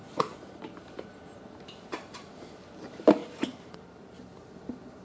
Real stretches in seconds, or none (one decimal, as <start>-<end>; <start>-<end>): none